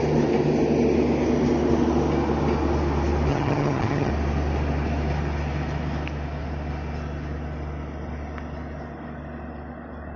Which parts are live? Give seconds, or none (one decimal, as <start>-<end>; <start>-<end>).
0.0-3.3; 4.1-10.2